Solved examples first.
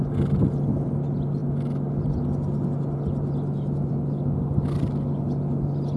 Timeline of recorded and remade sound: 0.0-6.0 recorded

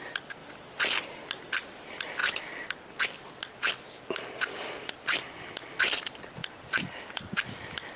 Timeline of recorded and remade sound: 0.0-8.0 recorded

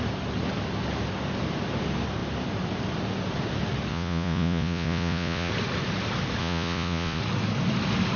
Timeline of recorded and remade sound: 0.0-3.9 recorded; 3.9-5.5 remade; 5.5-6.4 recorded; 6.4-7.2 remade; 7.2-8.2 recorded

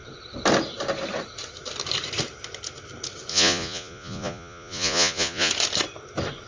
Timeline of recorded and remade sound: 0.0-3.3 recorded; 3.3-5.5 remade; 5.5-6.5 recorded

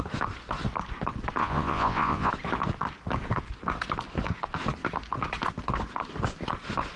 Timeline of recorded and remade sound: 0.0-1.4 recorded; 1.4-2.3 remade; 2.3-7.0 recorded

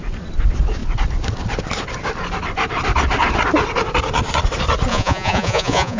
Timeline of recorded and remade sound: 0.0-4.9 recorded; 4.9-6.0 remade